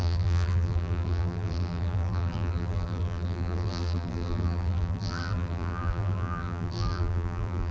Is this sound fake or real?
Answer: fake